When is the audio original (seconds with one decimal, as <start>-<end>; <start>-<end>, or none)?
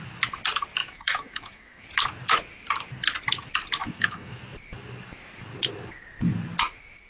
0.0-0.8; 1.9-3.8; 4.4-7.1